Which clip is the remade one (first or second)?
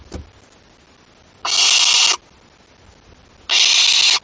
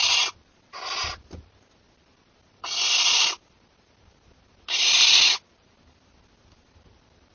second